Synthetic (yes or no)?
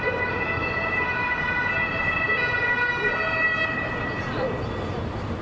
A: no